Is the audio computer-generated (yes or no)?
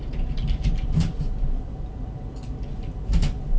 no